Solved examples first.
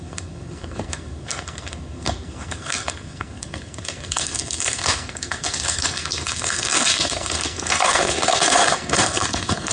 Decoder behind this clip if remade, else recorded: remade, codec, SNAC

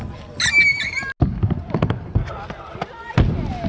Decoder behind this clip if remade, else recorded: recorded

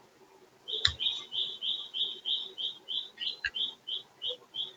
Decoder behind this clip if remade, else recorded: recorded